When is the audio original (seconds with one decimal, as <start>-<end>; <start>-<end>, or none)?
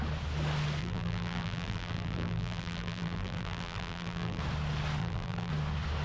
0.0-0.8; 4.4-5.0; 5.5-6.0